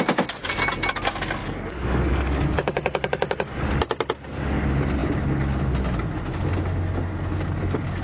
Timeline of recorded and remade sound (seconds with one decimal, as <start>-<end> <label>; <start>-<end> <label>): 0.0-1.4 recorded; 1.4-3.8 remade; 3.8-8.0 recorded